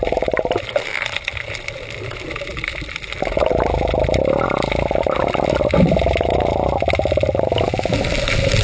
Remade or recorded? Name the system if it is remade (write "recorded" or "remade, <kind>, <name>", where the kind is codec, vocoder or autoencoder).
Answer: recorded